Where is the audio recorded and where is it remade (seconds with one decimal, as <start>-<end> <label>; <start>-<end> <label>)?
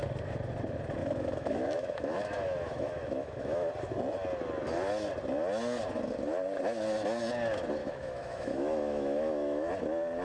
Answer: 0.0-1.0 recorded; 1.0-3.7 remade; 3.7-7.8 recorded; 7.8-9.7 remade; 9.7-10.2 recorded